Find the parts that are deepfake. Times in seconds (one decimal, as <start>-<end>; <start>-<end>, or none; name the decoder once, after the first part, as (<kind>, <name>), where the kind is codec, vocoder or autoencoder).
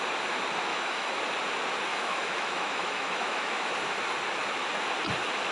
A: 0.7-1.2 (autoencoder, DAC-VAE); 1.9-3.7